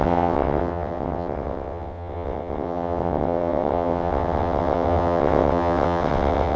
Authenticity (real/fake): fake